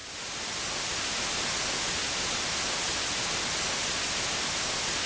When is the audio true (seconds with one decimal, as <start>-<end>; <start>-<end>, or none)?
0.0-5.1